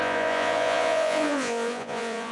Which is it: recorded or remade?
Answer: remade